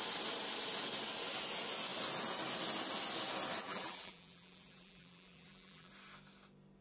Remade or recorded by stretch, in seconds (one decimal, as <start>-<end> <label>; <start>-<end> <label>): 0.0-3.6 recorded; 3.6-5.9 remade; 5.9-6.8 recorded